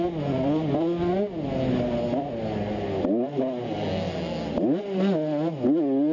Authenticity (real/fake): real